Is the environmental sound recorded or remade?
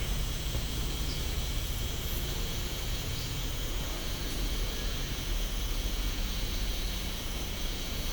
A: remade